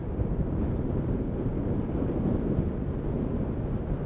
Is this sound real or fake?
real